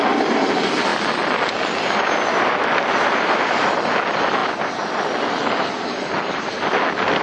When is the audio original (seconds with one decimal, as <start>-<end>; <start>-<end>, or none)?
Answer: 0.0-7.2